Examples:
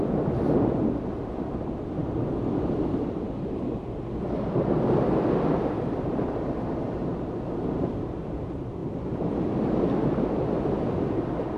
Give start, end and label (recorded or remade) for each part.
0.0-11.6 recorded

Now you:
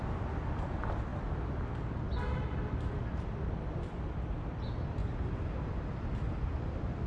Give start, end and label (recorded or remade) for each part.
0.0-7.1 recorded

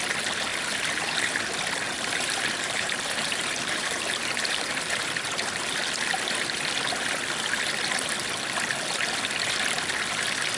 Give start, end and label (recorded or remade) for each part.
0.0-0.5 recorded; 0.5-1.4 remade; 1.4-1.9 recorded; 1.9-5.7 remade; 5.7-10.6 recorded